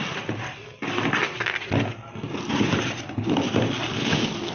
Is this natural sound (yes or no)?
yes